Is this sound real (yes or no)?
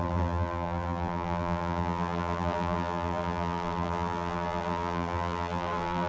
no